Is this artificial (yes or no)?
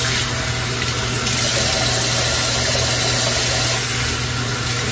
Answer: no